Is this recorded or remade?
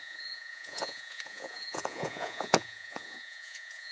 remade